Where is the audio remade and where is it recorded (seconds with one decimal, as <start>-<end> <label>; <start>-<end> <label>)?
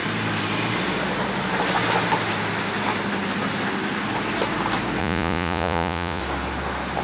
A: 0.0-5.0 recorded; 5.0-6.2 remade; 6.2-7.0 recorded